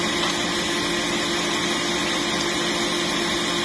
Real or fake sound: real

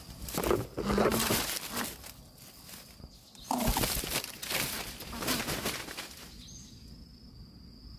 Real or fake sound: real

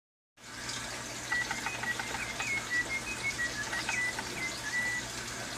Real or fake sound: real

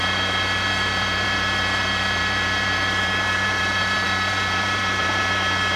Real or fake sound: fake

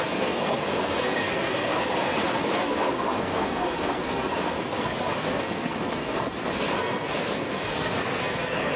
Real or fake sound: fake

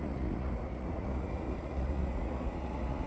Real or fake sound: fake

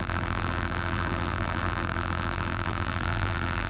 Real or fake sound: fake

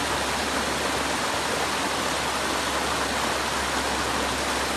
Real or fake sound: real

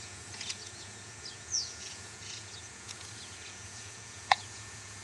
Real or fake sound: fake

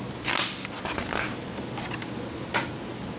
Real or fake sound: real